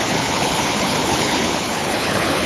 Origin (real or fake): fake